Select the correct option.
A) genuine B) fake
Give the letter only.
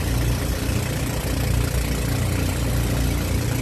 A